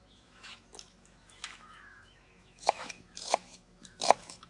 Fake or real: fake